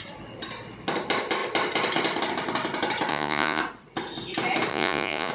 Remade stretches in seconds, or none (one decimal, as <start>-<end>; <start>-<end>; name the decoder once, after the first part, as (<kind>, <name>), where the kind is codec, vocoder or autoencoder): 3.1-3.6 (vocoder, Vocos); 4.7-5.3